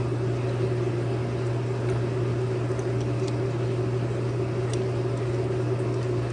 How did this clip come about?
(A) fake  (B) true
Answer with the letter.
B